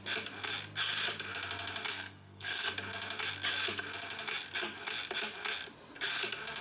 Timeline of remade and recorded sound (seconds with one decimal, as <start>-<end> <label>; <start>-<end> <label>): 0.0-1.9 recorded; 1.9-2.7 remade; 2.7-6.6 recorded